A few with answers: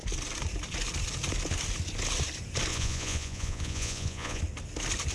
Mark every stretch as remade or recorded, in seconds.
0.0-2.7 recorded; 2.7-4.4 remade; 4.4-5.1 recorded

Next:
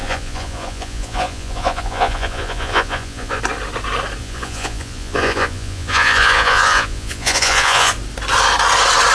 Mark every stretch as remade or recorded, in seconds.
0.0-3.4 remade; 3.4-4.2 recorded; 4.2-7.9 remade; 7.9-9.1 recorded